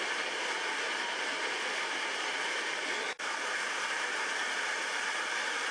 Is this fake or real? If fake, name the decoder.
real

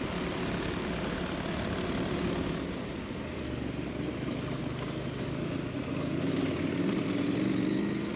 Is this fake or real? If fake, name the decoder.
real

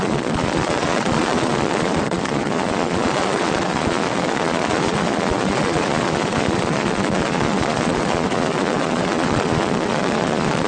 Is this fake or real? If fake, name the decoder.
fake, vocoder, Vocos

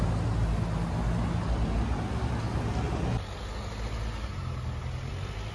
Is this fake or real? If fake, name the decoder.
real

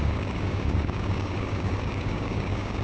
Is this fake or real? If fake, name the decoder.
fake, codec, DAC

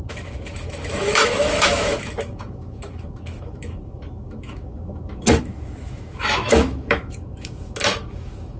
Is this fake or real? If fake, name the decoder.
fake, autoencoder, DAC-VAE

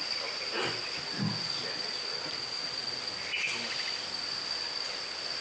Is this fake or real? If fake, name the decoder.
real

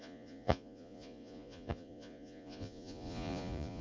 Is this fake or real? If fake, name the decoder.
fake, vocoder, Vocos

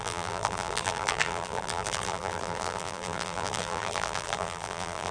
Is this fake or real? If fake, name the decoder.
fake, vocoder, BigVGAN v2